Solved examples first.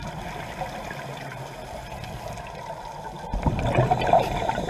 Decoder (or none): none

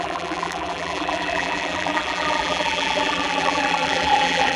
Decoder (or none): vocoder, BigVGAN v2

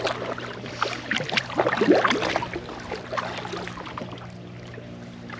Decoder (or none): none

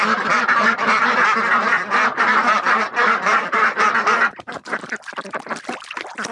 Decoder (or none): none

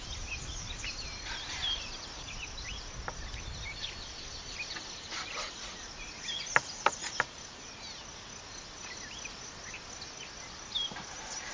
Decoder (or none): none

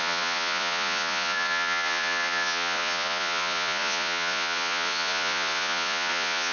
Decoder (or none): vocoder, Vocos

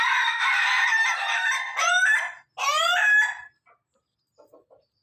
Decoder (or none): none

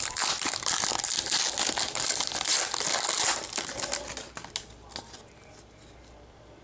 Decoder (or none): none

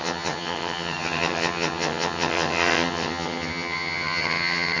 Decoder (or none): vocoder, HiFi-GAN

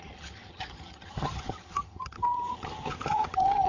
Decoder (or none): vocoder, HiFi-GAN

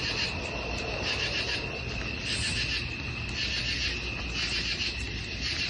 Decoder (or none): none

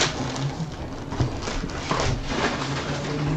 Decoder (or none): none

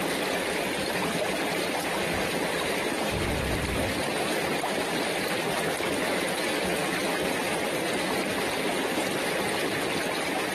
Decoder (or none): none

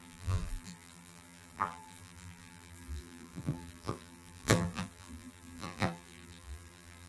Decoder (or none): vocoder, BigVGAN v2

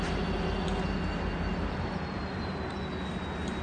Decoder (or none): none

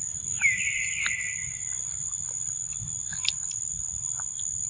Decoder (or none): none